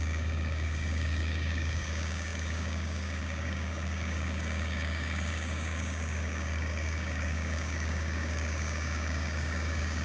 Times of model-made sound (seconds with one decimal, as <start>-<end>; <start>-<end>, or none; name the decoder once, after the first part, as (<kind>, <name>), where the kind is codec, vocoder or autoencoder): 0.0-10.0 (codec, DAC)